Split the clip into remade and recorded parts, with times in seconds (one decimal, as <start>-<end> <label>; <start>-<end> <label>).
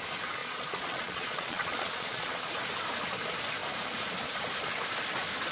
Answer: 0.0-0.4 recorded; 0.4-2.5 remade; 2.5-5.5 recorded